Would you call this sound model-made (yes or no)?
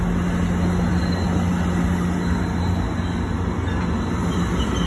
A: no